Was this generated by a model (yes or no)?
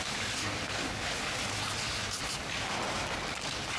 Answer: no